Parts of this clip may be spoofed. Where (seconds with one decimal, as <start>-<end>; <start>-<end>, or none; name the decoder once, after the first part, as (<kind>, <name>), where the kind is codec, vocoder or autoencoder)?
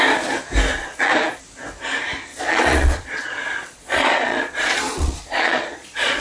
0.7-1.4 (vocoder, Vocos); 2.3-6.2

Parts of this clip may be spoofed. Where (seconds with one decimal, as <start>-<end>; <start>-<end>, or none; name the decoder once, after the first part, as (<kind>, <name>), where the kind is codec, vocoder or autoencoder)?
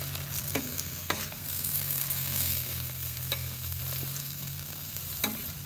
0.4-3.8 (codec, SNAC); 4.2-5.0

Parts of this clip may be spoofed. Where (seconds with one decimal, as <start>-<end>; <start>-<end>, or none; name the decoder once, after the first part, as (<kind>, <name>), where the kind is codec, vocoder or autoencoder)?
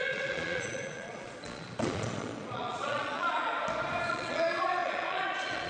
0.0-3.5 (vocoder, Vocos); 4.1-5.7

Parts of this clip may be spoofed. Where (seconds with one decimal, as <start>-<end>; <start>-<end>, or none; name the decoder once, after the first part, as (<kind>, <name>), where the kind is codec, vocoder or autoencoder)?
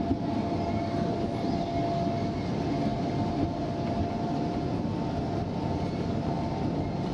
none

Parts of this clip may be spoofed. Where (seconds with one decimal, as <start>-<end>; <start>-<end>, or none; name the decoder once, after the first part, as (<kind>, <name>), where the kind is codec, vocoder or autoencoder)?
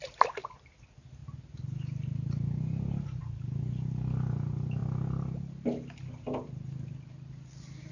none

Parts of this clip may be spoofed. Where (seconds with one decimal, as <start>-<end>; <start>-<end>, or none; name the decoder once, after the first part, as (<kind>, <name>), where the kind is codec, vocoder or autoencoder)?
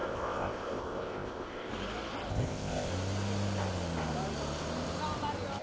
0.0-1.7 (codec, ZipCodec); 2.3-2.9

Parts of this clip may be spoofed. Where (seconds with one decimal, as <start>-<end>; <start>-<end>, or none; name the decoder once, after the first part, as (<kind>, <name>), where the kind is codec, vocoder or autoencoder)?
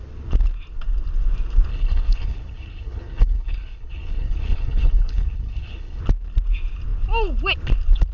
1.7-6.0 (codec, HILCodec)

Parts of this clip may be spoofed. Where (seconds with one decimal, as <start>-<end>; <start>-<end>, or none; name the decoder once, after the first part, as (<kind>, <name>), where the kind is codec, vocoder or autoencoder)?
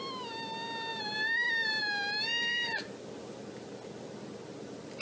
none